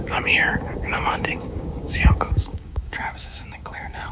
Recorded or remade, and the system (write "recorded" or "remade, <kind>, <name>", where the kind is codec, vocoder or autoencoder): remade, codec, DAC